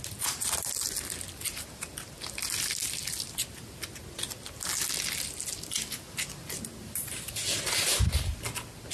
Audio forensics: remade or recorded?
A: recorded